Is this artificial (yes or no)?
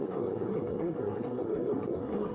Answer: yes